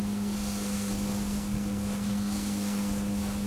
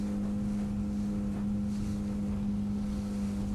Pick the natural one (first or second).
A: second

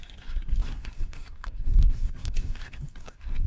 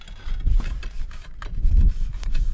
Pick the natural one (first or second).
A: second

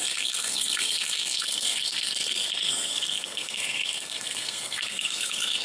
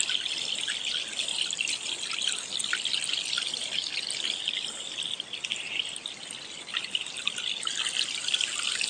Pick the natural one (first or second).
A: second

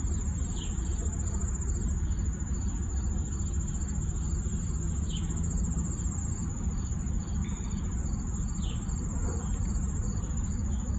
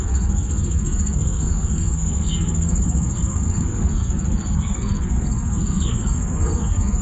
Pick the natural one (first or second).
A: first